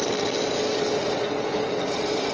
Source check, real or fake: real